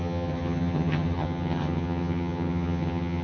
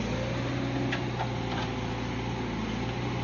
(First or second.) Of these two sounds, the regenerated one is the first